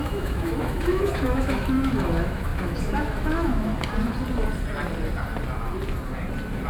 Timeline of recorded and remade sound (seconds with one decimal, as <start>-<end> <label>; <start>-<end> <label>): 0.0-3.7 remade; 3.7-6.7 recorded